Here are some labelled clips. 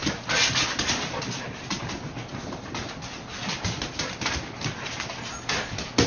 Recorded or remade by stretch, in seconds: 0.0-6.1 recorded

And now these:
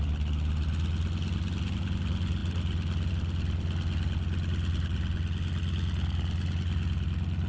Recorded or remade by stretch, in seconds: 0.0-7.5 recorded

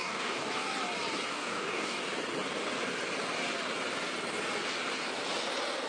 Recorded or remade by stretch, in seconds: 0.0-0.5 remade; 0.5-1.3 recorded; 1.3-2.0 remade; 2.0-5.9 recorded

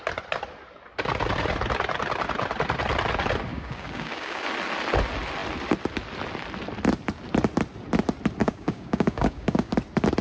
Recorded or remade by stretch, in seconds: 0.0-3.5 recorded; 3.5-4.4 remade; 4.4-8.4 recorded; 8.4-9.7 remade; 9.7-10.2 recorded

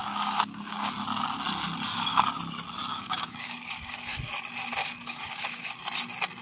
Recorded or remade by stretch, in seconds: 0.0-0.9 remade; 0.9-1.9 recorded; 1.9-2.4 remade; 2.4-2.9 recorded; 2.9-4.3 remade; 4.3-4.8 recorded; 4.8-5.8 remade; 5.8-6.4 recorded